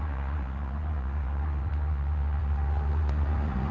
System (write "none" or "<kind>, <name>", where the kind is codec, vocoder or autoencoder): vocoder, Vocos